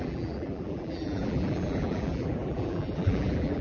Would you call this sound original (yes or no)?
no